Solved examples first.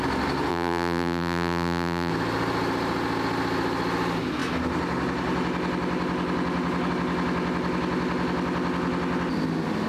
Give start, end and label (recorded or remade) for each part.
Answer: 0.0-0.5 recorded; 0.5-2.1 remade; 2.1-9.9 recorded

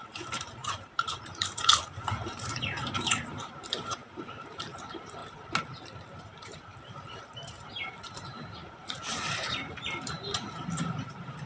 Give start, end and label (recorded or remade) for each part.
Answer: 0.0-5.2 remade; 5.2-6.2 recorded; 6.2-11.5 remade

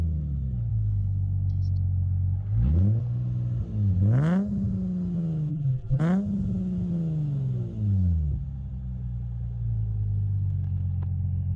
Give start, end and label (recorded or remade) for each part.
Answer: 0.0-5.5 recorded; 5.5-6.0 remade; 6.0-11.6 recorded